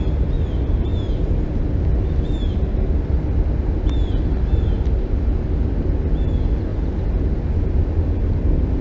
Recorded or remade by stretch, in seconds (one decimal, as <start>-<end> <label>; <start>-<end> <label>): 0.0-8.8 recorded